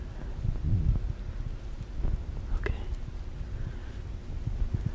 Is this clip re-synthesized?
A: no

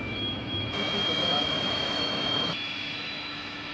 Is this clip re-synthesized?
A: yes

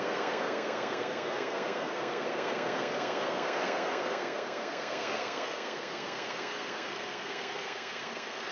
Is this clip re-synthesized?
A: yes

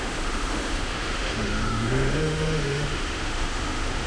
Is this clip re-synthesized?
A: yes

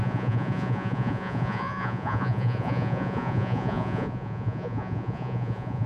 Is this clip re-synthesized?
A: yes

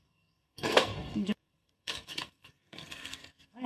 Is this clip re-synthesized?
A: yes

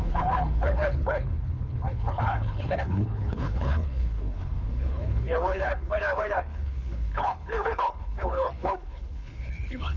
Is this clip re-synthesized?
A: yes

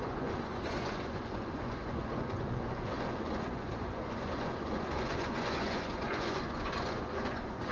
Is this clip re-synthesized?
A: yes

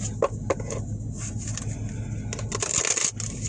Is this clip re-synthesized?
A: no